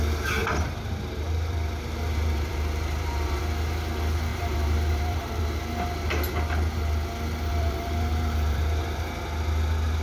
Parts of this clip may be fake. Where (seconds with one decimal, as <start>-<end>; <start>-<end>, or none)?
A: 0.4-3.4; 4.3-5.4; 7.5-9.2